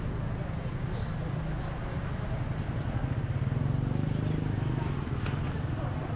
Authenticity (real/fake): real